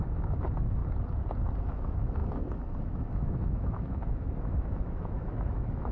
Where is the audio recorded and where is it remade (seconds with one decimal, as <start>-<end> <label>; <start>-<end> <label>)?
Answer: 0.0-0.8 remade; 0.8-1.6 recorded; 1.6-5.9 remade